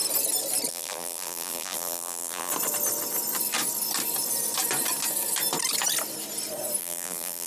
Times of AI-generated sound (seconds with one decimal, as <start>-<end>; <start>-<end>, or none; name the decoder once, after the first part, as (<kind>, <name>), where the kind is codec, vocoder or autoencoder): 0.7-2.5 (vocoder, BigVGAN v2); 6.8-7.5